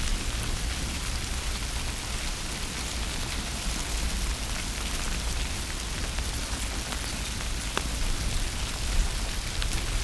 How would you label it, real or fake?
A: real